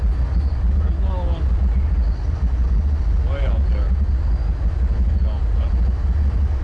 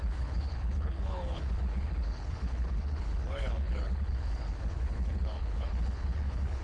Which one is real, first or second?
first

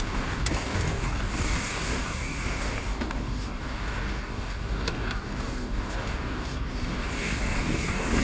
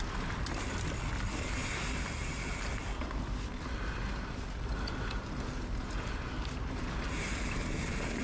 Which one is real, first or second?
second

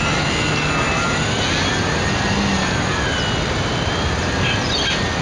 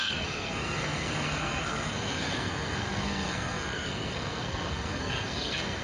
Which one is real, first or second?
first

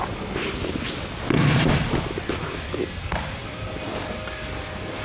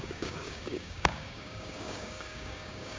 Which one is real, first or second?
first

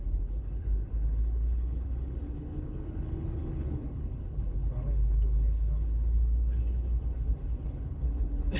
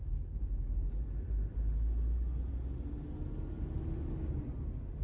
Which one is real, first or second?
second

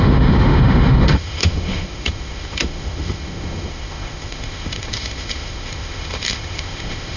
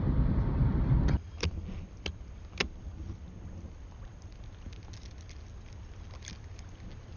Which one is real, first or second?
second